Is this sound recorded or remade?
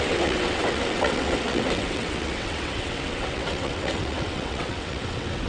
remade